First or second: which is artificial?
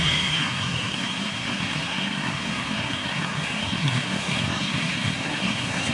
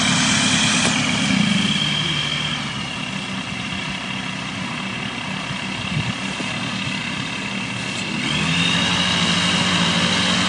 first